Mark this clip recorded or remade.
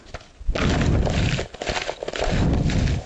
recorded